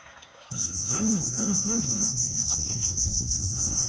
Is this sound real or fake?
fake